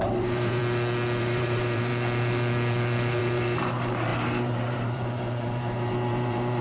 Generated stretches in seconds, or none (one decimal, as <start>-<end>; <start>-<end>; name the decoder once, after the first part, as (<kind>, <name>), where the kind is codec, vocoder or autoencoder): 0.0-0.6 (vocoder, BigVGAN v2); 1.2-1.9; 3.2-6.6